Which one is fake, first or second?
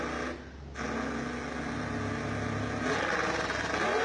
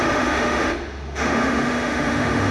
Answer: second